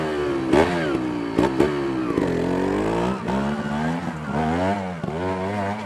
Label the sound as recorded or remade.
recorded